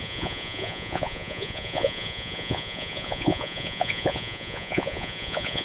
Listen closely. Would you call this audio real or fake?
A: fake